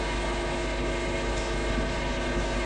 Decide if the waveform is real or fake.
fake